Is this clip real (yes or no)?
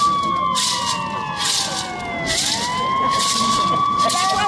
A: yes